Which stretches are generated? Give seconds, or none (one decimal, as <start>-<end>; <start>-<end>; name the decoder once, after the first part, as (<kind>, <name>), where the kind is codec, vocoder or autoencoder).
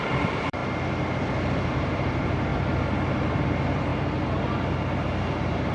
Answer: 0.0-0.6 (vocoder, BigVGAN v2); 1.7-2.5; 3.1-3.9; 5.0-5.7